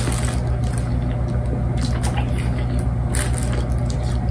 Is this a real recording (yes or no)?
yes